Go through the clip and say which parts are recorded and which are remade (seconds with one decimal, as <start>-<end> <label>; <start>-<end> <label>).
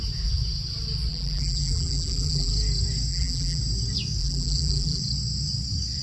0.0-1.1 recorded; 1.1-2.5 remade; 2.5-3.1 recorded; 3.1-3.6 remade; 3.6-4.2 recorded; 4.2-5.0 remade; 5.0-6.0 recorded